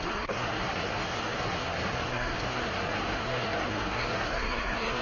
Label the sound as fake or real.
fake